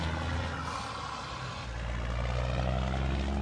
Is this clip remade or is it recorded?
recorded